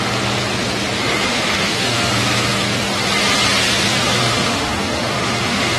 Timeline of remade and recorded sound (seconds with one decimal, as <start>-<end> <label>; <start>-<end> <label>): 0.0-1.3 recorded; 1.3-2.1 remade; 2.1-4.2 recorded; 4.2-5.8 remade